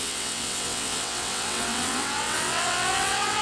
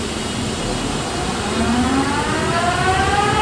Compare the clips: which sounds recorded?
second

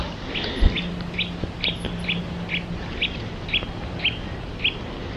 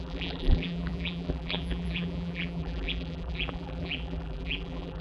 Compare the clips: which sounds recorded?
first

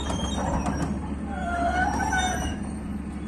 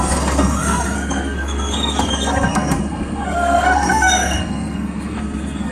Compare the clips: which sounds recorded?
first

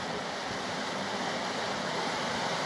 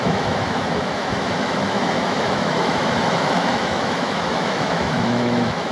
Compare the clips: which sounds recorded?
first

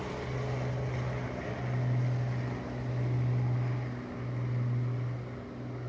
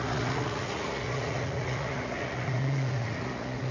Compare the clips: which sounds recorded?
first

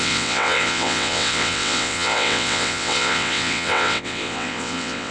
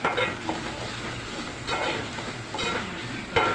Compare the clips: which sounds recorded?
second